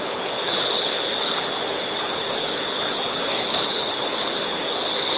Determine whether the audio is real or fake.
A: fake